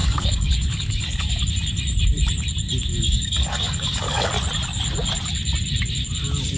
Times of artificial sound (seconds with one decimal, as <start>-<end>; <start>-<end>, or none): 0.0-1.4; 2.9-4.3